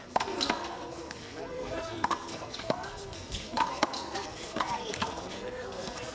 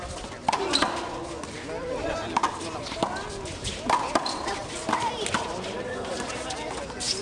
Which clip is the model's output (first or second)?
first